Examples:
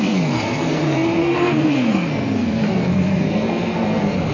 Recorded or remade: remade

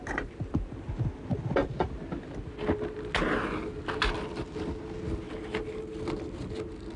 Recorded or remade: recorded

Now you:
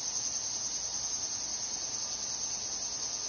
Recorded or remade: recorded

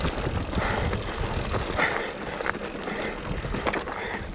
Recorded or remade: recorded